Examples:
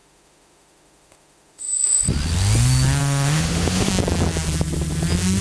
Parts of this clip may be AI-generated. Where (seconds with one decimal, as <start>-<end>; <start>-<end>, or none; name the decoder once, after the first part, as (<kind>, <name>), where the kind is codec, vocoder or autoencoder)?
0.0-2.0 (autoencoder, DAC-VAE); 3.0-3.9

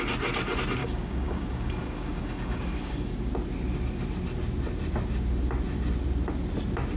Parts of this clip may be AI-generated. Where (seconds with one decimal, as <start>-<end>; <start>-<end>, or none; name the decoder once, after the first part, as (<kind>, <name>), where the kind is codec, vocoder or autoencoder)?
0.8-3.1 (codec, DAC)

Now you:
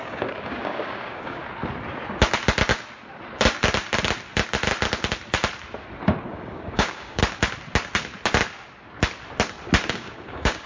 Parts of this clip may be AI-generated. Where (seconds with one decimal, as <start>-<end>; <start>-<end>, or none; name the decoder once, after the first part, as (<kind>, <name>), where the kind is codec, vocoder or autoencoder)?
0.0-1.4 (codec, DAC); 6.3-7.2; 9.9-10.7

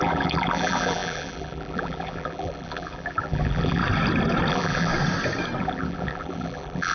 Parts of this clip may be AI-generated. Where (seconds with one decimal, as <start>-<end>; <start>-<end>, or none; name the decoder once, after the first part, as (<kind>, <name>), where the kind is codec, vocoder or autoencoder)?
0.0-3.8 (vocoder, BigVGAN v2); 4.5-4.9; 5.6-6.9

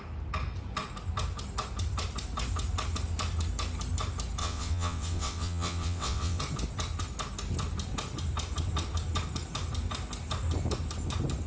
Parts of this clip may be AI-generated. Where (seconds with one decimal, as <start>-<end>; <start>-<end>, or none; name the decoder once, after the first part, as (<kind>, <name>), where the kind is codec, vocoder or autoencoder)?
4.4-6.4 (vocoder, WaveNeXt)